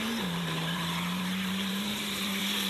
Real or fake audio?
fake